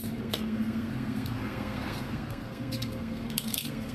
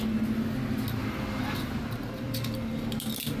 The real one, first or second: second